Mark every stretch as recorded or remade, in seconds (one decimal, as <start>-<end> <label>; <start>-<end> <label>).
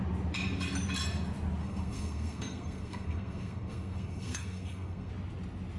0.0-1.6 recorded; 1.6-5.1 remade; 5.1-5.8 recorded